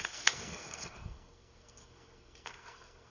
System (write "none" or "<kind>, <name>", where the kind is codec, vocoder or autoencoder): codec, SNAC